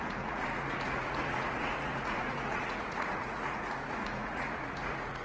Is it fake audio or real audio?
fake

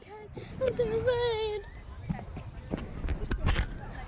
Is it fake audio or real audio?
real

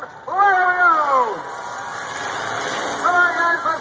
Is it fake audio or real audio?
real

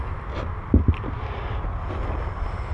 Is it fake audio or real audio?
real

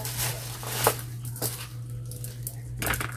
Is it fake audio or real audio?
real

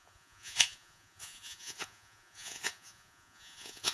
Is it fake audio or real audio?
fake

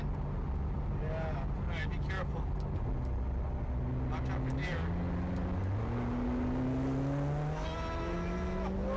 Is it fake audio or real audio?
real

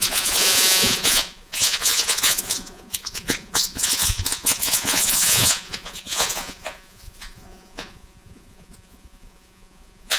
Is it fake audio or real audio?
fake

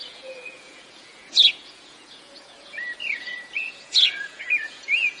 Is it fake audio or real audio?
fake